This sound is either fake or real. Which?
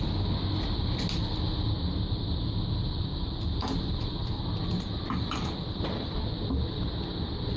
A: real